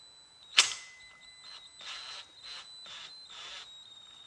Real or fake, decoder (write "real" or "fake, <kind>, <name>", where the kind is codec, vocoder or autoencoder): real